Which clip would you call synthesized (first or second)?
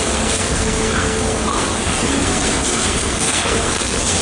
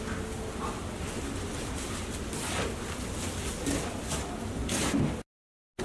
first